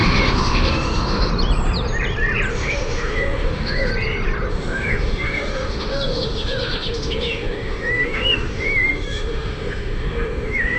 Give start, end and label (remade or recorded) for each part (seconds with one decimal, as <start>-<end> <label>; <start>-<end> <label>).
0.0-1.3 remade; 1.3-2.5 recorded; 2.5-3.9 remade; 3.9-4.5 recorded; 4.5-10.8 remade